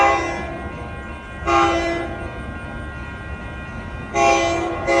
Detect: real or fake real